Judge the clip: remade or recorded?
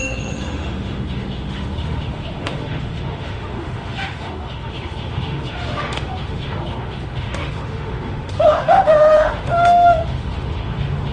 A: remade